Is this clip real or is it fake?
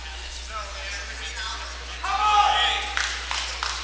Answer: real